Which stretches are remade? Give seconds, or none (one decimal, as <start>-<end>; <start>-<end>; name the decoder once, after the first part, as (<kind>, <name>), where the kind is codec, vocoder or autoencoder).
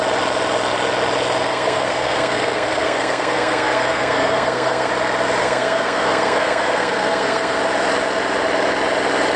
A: 1.5-4.9 (codec, SNAC); 5.4-7.6